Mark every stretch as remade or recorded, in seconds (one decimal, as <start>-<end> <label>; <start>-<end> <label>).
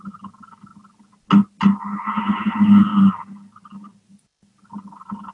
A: 0.0-0.7 remade; 0.7-1.8 recorded; 1.8-2.9 remade; 2.9-4.6 recorded; 4.6-5.3 remade